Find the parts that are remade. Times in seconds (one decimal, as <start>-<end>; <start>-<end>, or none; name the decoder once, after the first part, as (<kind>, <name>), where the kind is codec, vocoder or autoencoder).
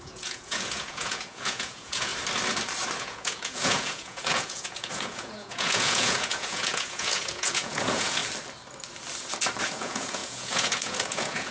0.0-2.1 (vocoder, Vocos); 3.0-8.2; 9.6-11.5